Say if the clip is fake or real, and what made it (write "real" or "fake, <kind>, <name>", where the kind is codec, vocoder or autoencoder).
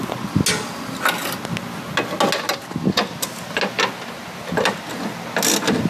real